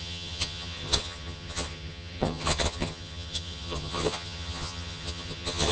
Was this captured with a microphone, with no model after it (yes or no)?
no